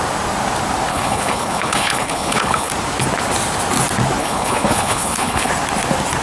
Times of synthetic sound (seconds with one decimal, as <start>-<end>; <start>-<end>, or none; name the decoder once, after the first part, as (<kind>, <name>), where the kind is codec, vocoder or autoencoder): 0.9-2.7 (codec, HILCodec); 4.2-5.5